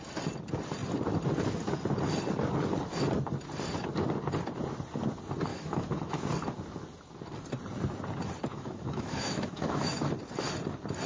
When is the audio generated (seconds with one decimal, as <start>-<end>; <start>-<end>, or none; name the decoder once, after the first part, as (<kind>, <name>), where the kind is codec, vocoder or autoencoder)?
5.5-6.3 (autoencoder, DAC-VAE); 8.5-10.1